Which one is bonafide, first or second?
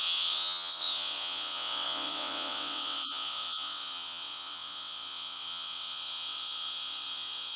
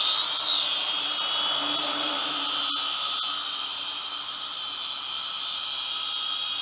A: second